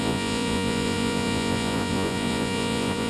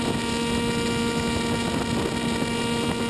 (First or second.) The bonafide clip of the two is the second